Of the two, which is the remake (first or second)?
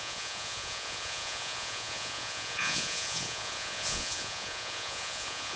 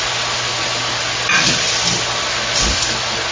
first